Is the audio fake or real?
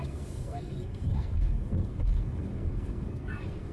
fake